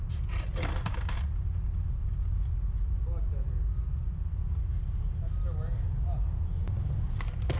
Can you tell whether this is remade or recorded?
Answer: recorded